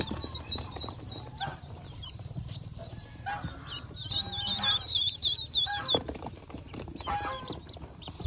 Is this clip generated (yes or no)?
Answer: yes